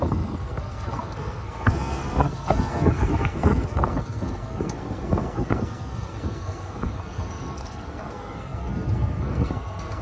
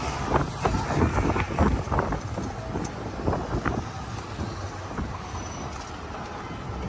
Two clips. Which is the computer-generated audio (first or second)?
first